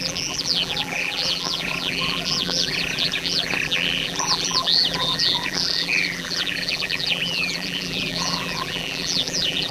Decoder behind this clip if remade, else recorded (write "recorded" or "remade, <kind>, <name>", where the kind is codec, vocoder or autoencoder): remade, vocoder, BigVGAN v2